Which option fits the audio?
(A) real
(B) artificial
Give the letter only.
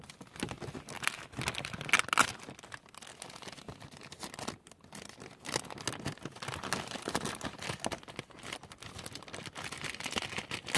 A